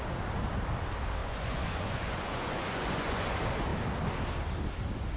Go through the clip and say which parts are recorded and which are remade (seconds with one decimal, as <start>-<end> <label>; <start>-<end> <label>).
0.0-1.2 recorded; 1.2-3.3 remade; 3.3-5.2 recorded